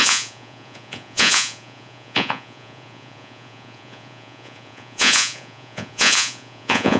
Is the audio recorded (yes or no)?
no